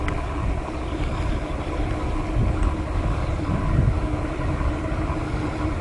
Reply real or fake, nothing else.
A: real